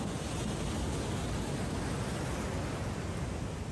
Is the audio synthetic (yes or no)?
no